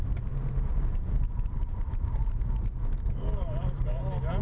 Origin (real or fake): fake